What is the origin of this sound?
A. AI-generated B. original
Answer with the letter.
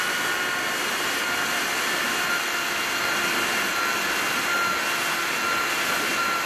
B